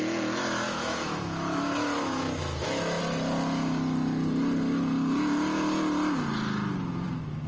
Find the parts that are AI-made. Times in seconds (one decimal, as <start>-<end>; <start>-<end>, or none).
0.4-3.0